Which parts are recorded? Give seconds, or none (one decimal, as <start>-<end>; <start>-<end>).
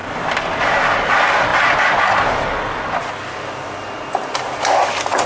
0.0-5.3